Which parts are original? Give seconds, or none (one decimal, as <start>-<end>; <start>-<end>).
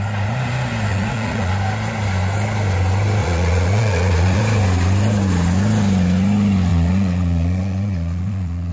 0.0-0.9; 1.5-3.2; 4.4-6.7